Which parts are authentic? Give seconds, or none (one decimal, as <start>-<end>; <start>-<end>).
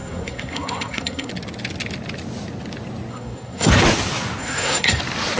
1.3-3.1; 3.7-4.4; 5.0-5.4